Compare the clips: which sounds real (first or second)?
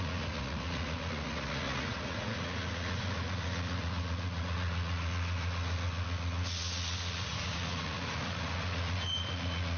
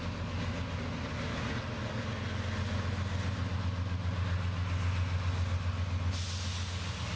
second